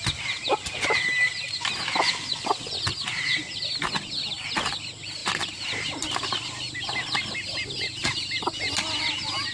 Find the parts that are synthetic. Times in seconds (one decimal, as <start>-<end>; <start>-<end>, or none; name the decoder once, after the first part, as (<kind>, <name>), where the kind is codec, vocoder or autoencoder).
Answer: none